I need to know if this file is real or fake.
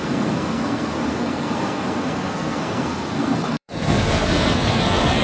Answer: fake